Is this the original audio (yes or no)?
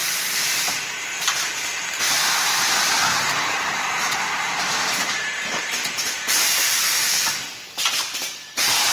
no